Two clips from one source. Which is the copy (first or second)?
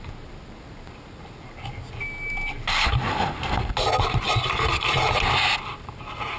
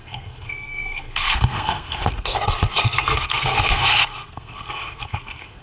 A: second